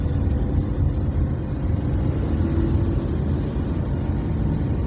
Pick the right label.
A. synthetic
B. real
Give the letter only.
B